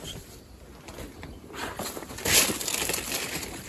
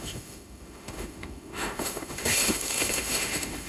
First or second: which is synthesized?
second